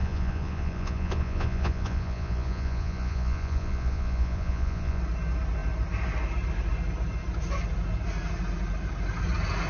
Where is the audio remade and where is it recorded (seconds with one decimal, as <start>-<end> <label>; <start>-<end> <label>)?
0.0-5.0 remade; 5.0-9.7 recorded